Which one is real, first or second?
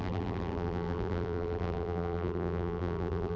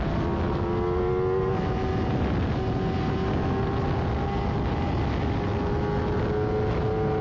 second